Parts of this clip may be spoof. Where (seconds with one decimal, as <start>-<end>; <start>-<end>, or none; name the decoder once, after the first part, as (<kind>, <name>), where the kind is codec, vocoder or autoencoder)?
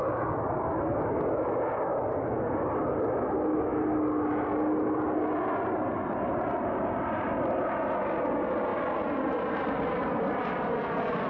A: 1.9-2.9 (vocoder, BigVGAN v2); 8.7-10.7